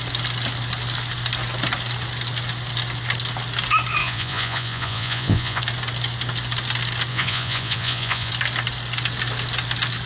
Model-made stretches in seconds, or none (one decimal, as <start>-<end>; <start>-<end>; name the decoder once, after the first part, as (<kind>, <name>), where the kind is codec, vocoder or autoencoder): 4.0-5.6 (vocoder, Vocos); 7.1-8.3